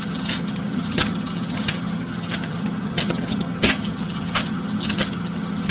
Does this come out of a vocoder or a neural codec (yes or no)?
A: yes